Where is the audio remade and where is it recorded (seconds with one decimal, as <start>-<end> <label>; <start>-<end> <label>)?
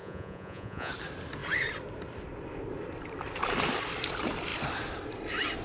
0.0-0.9 remade; 0.9-5.6 recorded